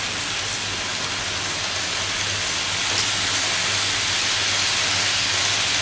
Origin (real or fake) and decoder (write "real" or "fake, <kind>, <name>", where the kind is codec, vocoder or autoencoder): real